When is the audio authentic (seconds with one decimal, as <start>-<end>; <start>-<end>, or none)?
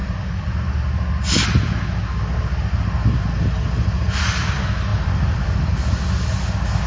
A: 0.8-4.9; 5.7-6.9